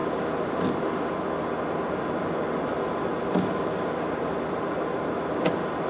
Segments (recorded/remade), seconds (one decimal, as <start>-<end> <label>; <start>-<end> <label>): 0.0-5.9 recorded